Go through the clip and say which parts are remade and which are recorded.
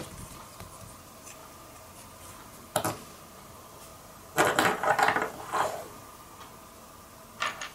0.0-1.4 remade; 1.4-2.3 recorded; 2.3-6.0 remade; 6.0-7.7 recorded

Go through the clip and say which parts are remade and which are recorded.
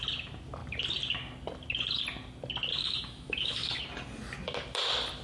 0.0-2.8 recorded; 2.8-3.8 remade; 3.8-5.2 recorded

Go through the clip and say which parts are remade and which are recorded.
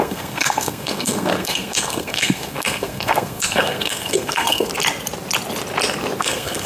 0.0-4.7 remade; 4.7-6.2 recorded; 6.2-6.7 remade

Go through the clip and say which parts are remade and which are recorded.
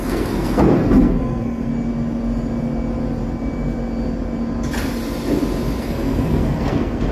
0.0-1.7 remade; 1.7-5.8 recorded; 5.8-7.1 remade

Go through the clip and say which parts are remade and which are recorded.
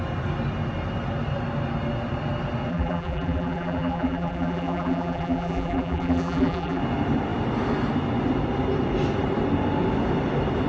0.0-2.7 recorded; 2.7-6.8 remade; 6.8-10.7 recorded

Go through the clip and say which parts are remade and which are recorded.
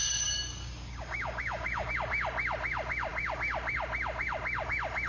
0.0-1.9 remade; 1.9-5.1 recorded